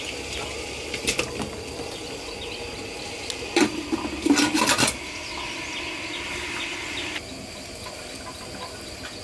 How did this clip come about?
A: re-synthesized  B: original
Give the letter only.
B